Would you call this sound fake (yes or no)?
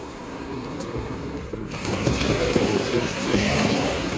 yes